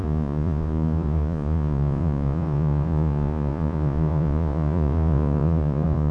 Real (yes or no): no